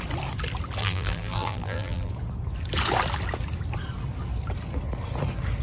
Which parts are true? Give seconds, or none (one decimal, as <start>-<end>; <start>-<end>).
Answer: 0.0-0.8; 2.1-5.6